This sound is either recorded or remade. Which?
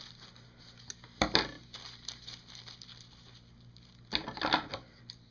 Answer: recorded